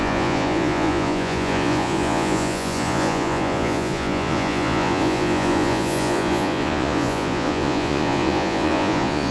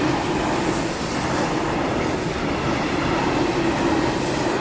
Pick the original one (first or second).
second